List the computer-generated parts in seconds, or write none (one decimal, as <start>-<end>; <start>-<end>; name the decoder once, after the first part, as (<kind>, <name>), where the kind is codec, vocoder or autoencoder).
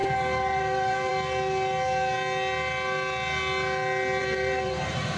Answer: 0.0-1.1 (vocoder, BigVGAN v2); 4.2-5.2